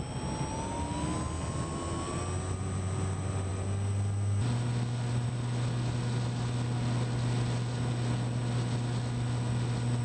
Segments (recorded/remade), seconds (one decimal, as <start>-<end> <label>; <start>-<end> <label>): 0.0-10.0 recorded